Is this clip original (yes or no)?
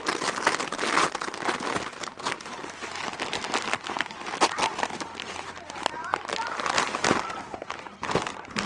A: yes